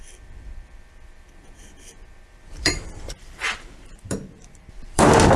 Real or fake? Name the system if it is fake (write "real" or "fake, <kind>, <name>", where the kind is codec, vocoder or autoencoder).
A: fake, vocoder, BigVGAN v2